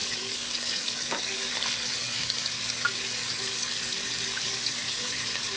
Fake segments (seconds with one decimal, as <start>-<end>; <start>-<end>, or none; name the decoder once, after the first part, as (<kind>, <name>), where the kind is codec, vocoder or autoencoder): 0.0-1.5 (codec, DAC); 2.0-5.6

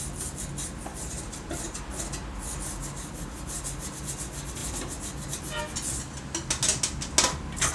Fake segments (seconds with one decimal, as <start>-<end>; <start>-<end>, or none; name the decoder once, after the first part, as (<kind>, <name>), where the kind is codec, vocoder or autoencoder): 0.9-1.8 (vocoder, BigVGAN v2)

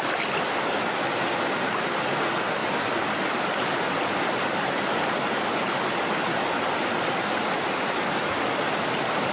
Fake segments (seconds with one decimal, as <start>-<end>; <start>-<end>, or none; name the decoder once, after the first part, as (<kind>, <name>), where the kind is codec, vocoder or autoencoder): none

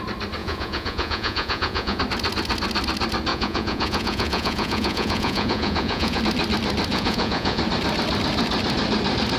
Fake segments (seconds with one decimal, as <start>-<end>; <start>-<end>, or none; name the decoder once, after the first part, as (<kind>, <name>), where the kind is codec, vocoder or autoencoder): 0.4-2.0 (vocoder, Vocos); 3.3-6.2; 6.9-7.6

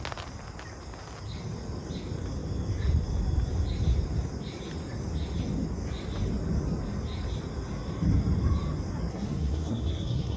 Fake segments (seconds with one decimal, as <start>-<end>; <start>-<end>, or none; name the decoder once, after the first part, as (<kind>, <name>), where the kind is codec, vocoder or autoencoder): 9.1-10.4 (codec, SNAC)

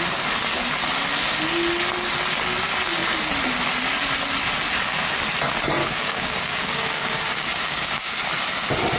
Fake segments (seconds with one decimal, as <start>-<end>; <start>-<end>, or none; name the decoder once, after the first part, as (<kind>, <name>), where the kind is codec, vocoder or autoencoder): 5.8-8.2 (codec, DAC)

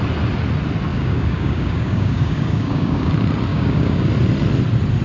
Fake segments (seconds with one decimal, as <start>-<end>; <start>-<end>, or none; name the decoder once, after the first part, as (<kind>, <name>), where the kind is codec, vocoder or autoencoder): 0.9-3.1 (codec, DAC); 3.5-4.1